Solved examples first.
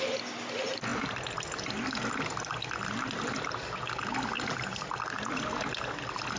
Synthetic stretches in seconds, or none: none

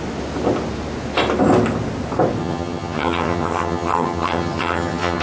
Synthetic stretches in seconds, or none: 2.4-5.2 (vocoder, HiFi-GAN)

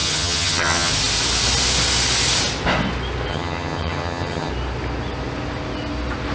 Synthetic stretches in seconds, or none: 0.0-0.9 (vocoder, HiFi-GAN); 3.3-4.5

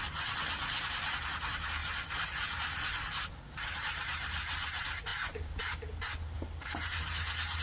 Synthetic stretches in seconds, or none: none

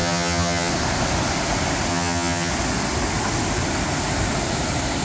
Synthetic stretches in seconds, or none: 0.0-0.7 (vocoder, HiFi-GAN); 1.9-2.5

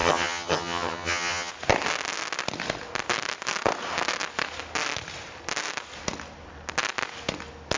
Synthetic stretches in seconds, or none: 0.0-1.5 (vocoder, HiFi-GAN)

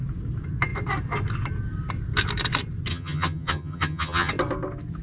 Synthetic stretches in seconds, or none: 2.9-4.3 (vocoder, HiFi-GAN)

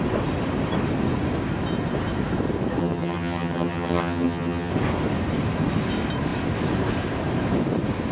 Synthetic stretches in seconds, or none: 2.8-4.7 (vocoder, HiFi-GAN)